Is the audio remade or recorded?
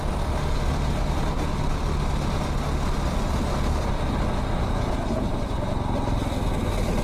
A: recorded